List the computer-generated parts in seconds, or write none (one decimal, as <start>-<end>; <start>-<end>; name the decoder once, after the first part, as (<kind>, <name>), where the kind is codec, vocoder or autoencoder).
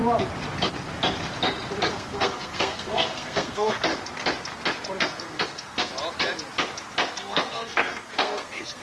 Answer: 1.9-3.9 (codec, SNAC); 5.0-5.9; 7.2-8.8